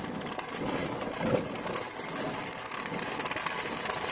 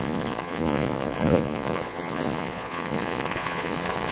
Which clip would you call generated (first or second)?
second